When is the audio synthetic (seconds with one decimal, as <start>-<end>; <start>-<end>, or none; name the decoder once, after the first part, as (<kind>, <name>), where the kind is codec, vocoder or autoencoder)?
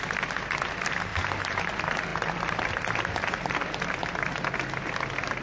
1.1-1.7 (vocoder, BigVGAN v2)